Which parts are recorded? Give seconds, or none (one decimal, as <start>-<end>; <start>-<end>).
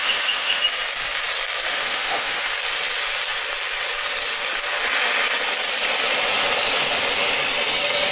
0.6-1.7; 2.5-8.1